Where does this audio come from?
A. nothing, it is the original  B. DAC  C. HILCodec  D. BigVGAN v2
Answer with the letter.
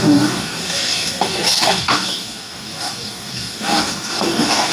B